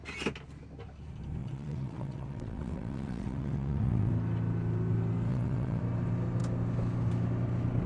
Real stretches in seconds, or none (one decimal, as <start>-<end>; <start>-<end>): 0.0-1.4; 4.1-5.3; 5.8-7.9